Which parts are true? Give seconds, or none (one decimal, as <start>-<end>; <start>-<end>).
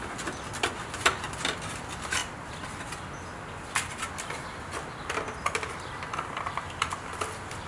0.0-7.7